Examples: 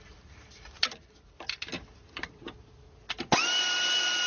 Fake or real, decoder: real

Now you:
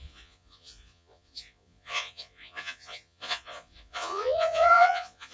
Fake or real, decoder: fake, vocoder, Vocos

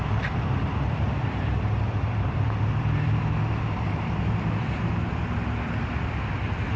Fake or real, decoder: fake, vocoder, BigVGAN v2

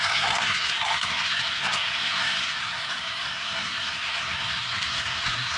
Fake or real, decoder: fake, codec, SNAC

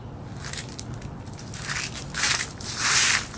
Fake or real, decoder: real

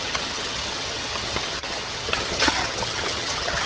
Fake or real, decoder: fake, vocoder, HiFi-GAN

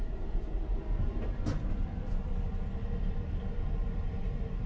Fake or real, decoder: real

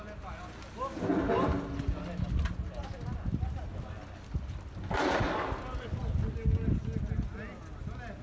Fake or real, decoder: real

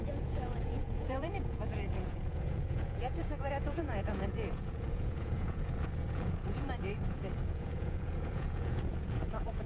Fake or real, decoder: fake, vocoder, Vocos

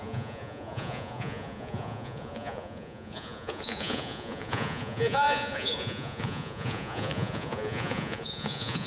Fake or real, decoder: fake, vocoder, Vocos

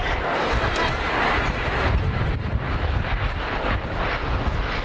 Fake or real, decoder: real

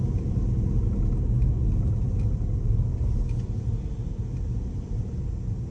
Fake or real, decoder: real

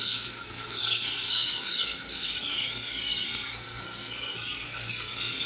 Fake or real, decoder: fake, codec, SNAC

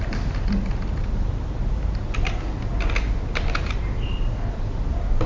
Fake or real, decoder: real